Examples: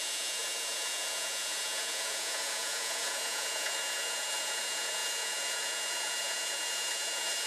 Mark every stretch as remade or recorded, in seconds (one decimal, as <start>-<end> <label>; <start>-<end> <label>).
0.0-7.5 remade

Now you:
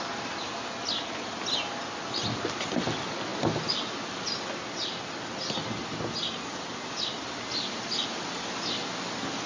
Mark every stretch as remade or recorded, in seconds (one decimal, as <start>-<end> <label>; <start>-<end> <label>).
0.0-9.5 recorded

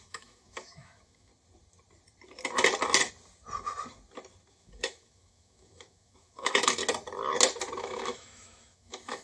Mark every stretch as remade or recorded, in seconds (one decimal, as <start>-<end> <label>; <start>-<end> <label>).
0.0-1.3 remade; 1.3-4.5 recorded; 4.5-6.8 remade; 6.8-7.8 recorded; 7.8-9.2 remade

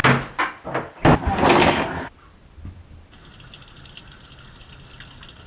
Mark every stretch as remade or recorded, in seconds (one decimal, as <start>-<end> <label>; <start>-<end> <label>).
0.0-5.5 recorded

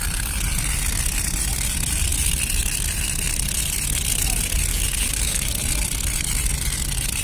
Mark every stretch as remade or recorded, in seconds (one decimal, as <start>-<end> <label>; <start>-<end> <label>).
0.0-4.7 recorded; 4.7-5.5 remade; 5.5-7.2 recorded

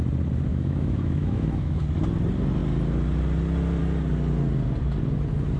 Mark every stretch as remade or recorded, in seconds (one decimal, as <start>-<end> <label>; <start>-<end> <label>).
0.0-0.5 recorded; 0.5-1.8 remade; 1.8-5.6 recorded

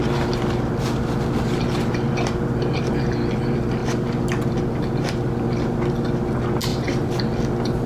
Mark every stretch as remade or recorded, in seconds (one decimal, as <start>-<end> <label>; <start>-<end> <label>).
0.0-6.7 recorded; 6.7-7.2 remade; 7.2-7.9 recorded

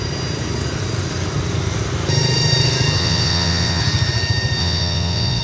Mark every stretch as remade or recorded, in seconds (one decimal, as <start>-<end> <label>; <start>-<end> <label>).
0.0-3.0 recorded; 3.0-3.8 remade; 3.8-4.6 recorded; 4.6-5.4 remade